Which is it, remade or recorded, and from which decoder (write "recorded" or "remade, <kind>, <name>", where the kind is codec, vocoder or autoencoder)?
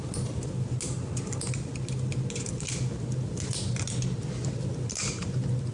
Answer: recorded